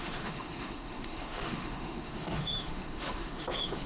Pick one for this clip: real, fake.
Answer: fake